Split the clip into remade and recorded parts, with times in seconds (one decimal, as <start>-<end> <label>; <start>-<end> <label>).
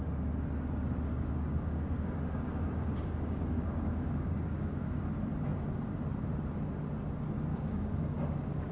0.0-1.1 recorded; 1.1-5.0 remade; 5.0-7.5 recorded; 7.5-8.7 remade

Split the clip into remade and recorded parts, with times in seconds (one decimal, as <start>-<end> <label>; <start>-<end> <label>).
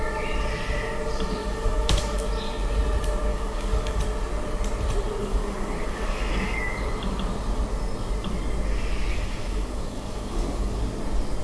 0.0-1.4 recorded; 1.4-2.3 remade; 2.3-3.3 recorded; 3.3-4.0 remade; 4.0-5.2 recorded; 5.2-6.9 remade; 6.9-9.1 recorded; 9.1-10.8 remade; 10.8-11.4 recorded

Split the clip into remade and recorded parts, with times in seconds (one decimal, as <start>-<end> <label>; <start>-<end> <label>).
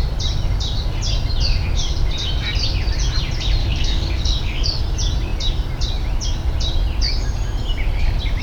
0.0-3.6 recorded; 3.6-4.8 remade; 4.8-8.4 recorded